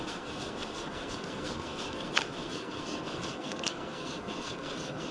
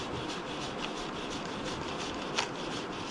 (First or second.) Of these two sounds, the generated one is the first